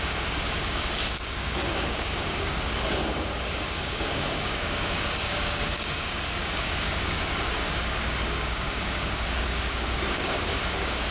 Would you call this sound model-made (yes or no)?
yes